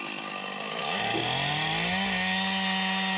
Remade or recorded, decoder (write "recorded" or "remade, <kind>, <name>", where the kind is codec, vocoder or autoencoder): recorded